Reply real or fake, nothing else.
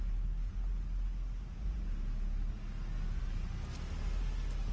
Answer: real